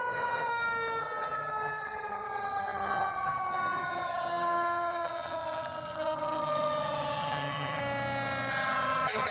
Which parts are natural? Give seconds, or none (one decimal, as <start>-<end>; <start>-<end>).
0.5-1.0; 7.8-8.5